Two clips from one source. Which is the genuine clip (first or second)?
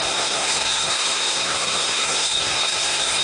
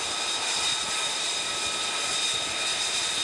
second